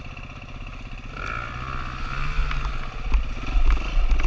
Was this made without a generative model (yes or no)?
yes